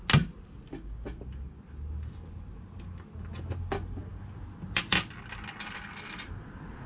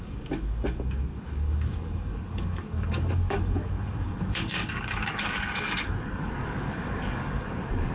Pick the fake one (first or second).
second